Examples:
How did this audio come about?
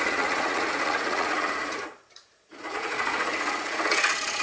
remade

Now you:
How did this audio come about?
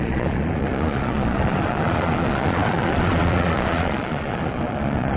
remade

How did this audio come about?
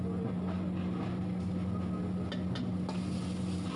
recorded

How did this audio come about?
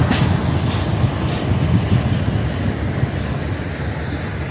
recorded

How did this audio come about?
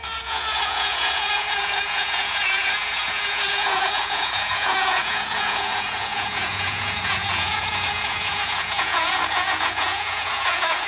remade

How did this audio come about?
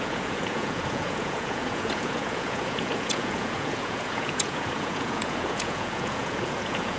remade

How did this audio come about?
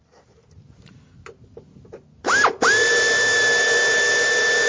recorded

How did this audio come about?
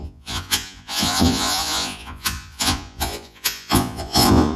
remade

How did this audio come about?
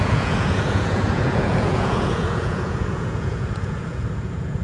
remade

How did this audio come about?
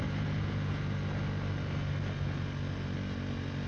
recorded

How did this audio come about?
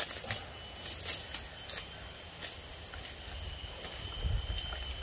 recorded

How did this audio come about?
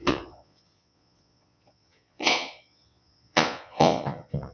remade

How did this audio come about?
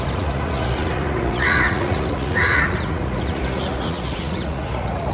remade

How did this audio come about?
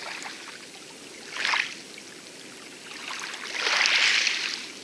recorded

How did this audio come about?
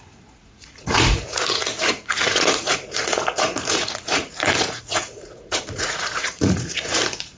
remade